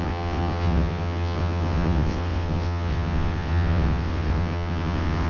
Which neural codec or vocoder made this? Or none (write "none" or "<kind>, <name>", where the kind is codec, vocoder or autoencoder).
vocoder, WaveNeXt